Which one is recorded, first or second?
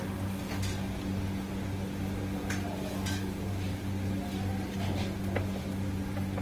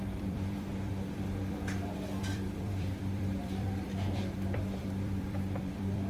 first